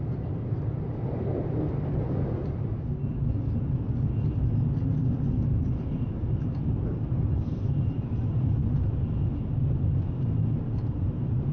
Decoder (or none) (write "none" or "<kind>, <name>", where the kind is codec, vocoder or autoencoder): none